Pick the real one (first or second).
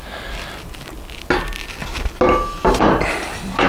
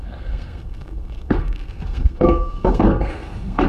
first